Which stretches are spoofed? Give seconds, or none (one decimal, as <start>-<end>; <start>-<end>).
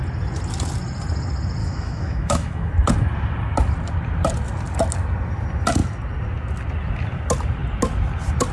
1.6-2.7